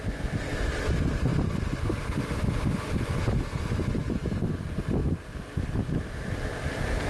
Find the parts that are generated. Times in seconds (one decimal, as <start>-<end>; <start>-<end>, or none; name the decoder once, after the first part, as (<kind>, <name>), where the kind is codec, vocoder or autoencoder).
none